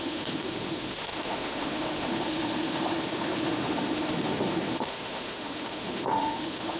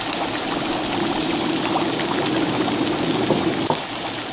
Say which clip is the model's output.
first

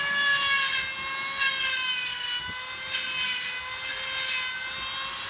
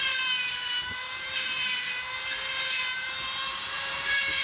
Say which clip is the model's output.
second